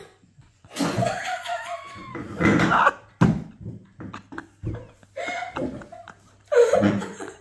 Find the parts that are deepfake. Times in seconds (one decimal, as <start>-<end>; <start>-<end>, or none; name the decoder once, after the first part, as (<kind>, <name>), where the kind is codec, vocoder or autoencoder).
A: 0.0-2.5 (vocoder, Vocos); 6.7-7.4